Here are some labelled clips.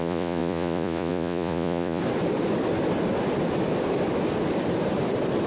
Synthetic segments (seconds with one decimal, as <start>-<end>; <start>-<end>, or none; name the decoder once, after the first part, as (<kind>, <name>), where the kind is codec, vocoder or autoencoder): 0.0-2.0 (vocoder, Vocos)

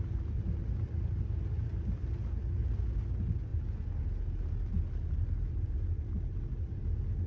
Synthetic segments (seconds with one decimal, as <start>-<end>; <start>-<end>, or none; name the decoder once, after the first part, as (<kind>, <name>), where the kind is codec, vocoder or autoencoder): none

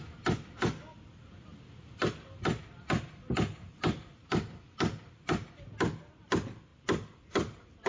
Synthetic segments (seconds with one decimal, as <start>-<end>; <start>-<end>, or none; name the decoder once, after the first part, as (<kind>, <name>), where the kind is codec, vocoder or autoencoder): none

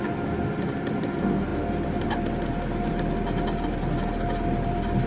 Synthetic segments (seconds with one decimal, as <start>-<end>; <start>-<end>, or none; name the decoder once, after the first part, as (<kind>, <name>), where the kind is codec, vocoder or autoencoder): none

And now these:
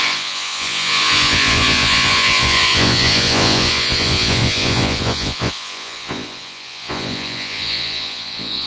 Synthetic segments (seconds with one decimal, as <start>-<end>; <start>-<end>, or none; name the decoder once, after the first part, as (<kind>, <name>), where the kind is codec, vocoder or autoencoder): 0.0-8.7 (vocoder, Vocos)

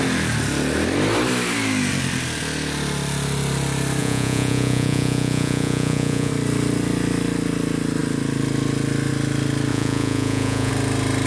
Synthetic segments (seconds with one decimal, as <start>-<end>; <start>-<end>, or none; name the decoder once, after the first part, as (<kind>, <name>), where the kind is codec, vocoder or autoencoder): 4.0-6.3 (vocoder, Vocos); 9.7-10.7